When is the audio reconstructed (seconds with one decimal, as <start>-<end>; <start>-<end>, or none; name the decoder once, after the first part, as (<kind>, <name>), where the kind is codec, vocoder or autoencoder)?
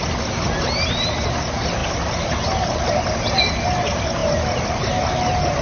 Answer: none